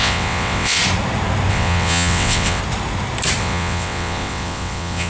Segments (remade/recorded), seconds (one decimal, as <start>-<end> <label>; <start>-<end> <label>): 0.0-0.8 remade; 0.8-1.5 recorded; 1.5-2.6 remade; 2.6-3.4 recorded; 3.4-5.1 remade